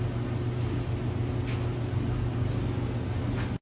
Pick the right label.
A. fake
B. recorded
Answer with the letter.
B